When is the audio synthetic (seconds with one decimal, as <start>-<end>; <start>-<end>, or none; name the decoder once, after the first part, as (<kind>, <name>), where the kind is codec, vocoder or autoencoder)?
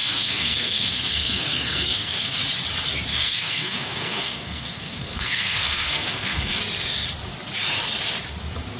0.0-2.4 (codec, SNAC); 3.1-6.6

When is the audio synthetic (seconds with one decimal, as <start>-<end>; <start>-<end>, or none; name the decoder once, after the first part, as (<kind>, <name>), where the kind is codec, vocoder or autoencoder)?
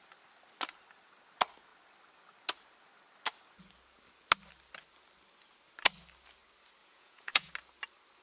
6.8-7.5 (vocoder, Vocos)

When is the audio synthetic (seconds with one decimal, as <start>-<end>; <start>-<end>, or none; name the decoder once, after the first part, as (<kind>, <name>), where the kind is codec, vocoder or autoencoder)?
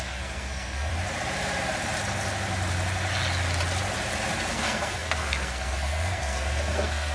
0.0-0.9 (codec, SNAC); 4.5-7.1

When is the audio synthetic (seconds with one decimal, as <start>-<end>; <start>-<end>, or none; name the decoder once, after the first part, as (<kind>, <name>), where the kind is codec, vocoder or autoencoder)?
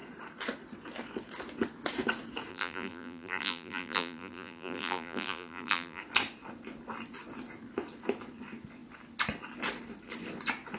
2.5-6.0 (vocoder, BigVGAN v2)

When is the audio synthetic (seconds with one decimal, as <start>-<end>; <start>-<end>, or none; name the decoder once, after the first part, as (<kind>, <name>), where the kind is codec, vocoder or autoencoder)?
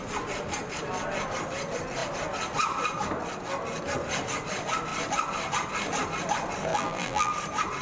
6.7-7.3 (vocoder, BigVGAN v2)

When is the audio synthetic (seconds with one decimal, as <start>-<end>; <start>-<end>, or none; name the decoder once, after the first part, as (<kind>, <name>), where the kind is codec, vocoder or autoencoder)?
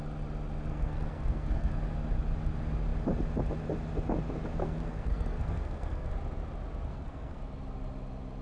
0.7-1.7 (codec, SNAC); 4.6-6.1; 6.9-7.4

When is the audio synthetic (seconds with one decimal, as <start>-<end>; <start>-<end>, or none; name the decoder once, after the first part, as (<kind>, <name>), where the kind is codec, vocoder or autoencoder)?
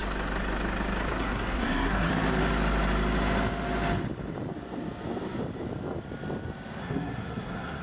1.1-2.1 (codec, SNAC); 6.8-7.8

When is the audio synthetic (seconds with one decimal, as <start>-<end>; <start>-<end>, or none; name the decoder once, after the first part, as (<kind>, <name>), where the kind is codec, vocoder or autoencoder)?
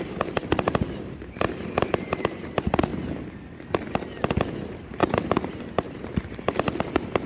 0.0-2.9 (vocoder, BigVGAN v2); 4.5-7.3